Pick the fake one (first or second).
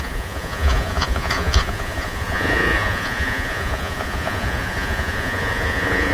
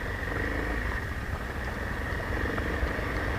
first